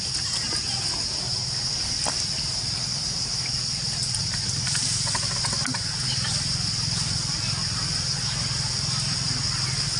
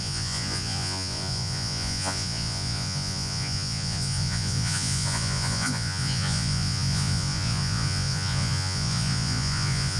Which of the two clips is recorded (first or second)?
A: first